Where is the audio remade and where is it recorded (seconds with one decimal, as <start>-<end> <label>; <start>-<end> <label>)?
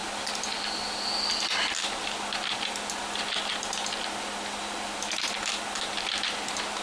0.0-6.8 recorded